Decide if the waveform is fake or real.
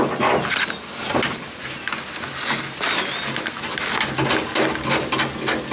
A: real